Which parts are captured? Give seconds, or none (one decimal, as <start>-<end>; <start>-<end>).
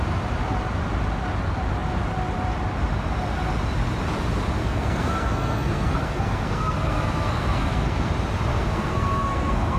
0.0-4.6; 8.1-8.5